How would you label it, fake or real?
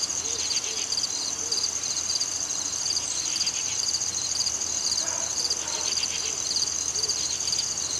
real